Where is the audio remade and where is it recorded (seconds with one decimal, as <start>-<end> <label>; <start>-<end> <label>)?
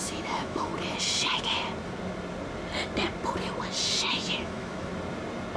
0.0-0.7 remade; 0.7-4.1 recorded; 4.1-4.9 remade; 4.9-5.6 recorded